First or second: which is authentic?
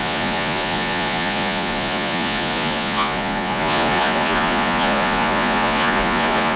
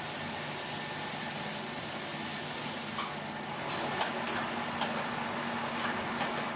second